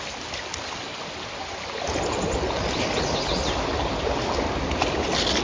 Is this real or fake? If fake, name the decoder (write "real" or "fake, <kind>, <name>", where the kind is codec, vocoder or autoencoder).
real